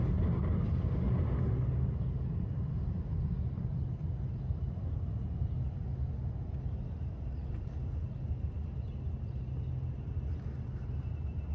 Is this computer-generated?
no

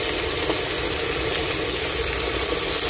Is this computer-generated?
no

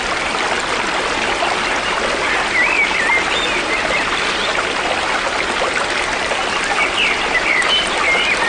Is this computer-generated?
no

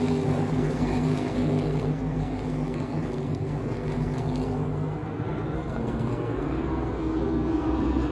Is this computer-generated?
yes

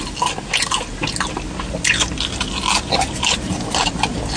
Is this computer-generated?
no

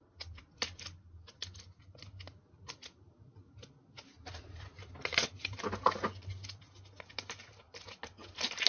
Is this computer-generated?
no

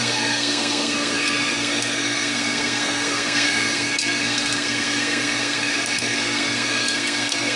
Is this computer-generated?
yes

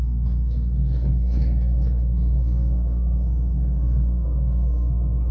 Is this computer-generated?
yes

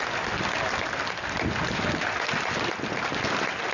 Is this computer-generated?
no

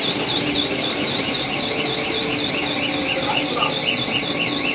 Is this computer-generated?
no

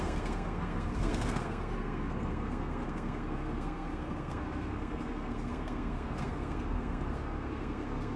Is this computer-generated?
yes